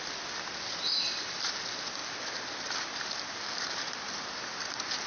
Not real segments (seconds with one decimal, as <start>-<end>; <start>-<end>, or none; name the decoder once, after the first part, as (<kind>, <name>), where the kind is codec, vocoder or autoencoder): none